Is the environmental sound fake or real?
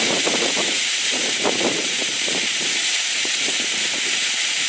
fake